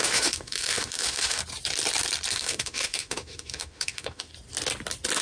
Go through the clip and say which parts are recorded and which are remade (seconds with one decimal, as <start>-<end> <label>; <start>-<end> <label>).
0.0-1.4 remade; 1.4-2.3 recorded; 2.3-4.3 remade; 4.3-5.2 recorded